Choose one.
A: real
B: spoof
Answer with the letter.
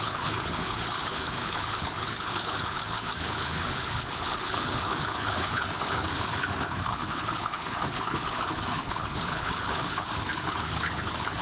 B